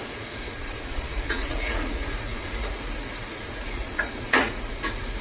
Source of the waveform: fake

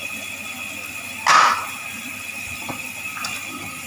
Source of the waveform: real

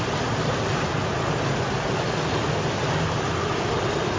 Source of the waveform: real